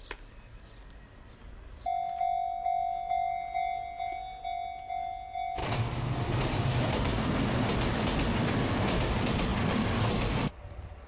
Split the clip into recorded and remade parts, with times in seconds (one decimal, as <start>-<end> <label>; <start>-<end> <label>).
0.0-5.6 recorded; 5.6-7.4 remade; 7.4-11.1 recorded